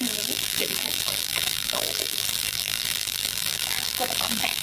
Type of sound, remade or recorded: remade